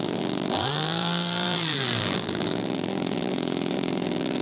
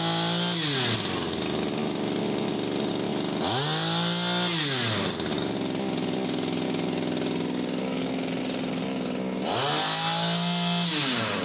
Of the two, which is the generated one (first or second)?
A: first